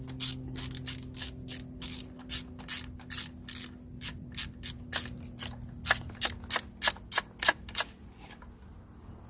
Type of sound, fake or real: real